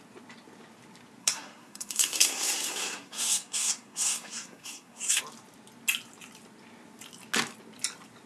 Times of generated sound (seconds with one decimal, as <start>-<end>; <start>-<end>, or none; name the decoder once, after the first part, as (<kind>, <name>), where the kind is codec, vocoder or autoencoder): 1.2-5.2 (codec, SNAC)